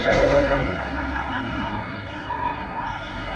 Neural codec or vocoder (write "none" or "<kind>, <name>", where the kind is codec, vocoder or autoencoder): codec, SNAC